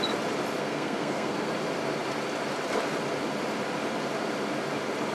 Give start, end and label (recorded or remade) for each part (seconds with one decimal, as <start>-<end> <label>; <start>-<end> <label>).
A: 0.0-0.6 recorded; 0.6-1.5 remade; 1.5-5.1 recorded